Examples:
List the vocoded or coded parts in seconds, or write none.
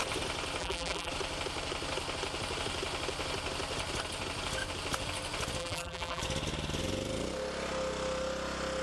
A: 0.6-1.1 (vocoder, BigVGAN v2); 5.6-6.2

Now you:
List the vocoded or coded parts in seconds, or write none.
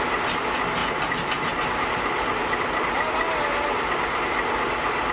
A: none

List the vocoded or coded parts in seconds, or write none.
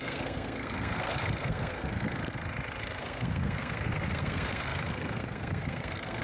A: 0.0-2.2 (codec, SNAC); 3.0-6.2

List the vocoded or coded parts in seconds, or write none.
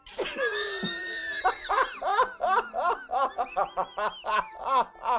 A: 0.0-2.1 (vocoder, BigVGAN v2)